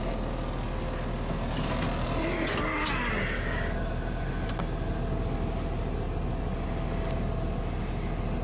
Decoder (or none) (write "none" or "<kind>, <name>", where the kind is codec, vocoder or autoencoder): none